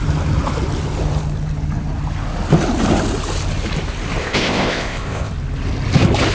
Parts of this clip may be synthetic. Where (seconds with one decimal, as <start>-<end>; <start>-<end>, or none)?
4.2-5.3